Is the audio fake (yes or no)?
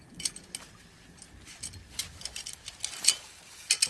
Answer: no